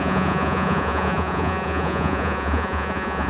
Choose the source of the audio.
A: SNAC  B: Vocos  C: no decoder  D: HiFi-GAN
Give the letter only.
B